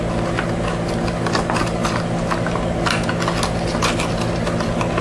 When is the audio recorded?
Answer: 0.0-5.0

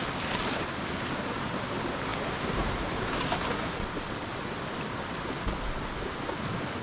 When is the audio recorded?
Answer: 0.0-6.8

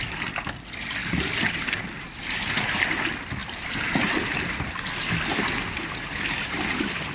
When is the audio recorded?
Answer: 0.0-7.1

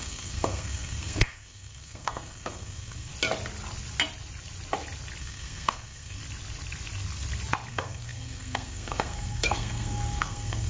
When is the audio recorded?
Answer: 3.1-5.2; 6.2-7.7

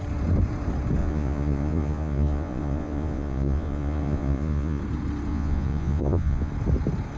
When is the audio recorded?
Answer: 0.0-1.0; 4.8-5.3; 6.5-7.2